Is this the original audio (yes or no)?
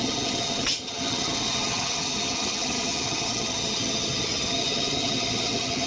no